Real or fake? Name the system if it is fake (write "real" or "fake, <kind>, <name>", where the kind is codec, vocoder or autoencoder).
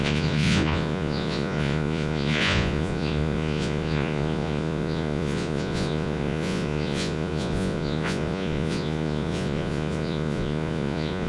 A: fake, vocoder, Vocos